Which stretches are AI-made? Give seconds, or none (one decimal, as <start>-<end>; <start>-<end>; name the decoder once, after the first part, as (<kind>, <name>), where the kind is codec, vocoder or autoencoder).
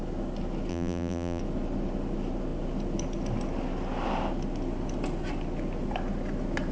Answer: 0.7-1.4 (vocoder, BigVGAN v2)